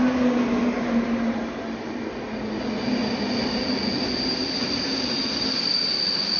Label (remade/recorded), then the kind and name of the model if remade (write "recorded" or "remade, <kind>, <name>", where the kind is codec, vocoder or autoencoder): recorded